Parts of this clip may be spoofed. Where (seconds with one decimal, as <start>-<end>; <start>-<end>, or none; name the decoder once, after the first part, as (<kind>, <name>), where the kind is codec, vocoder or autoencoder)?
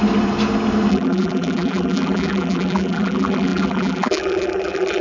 0.9-5.0 (vocoder, BigVGAN v2)